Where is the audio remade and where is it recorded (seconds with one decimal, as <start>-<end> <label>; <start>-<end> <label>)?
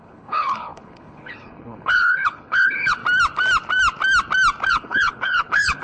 0.0-3.0 remade; 3.0-4.7 recorded; 4.7-5.8 remade